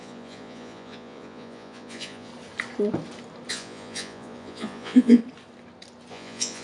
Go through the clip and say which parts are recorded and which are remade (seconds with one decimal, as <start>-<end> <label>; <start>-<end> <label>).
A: 0.0-2.3 remade; 2.3-3.5 recorded; 3.5-5.2 remade; 5.2-6.1 recorded; 6.1-6.6 remade